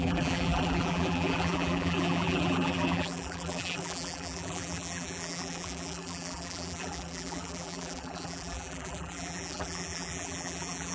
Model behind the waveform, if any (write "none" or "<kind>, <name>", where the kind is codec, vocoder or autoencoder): vocoder, BigVGAN v2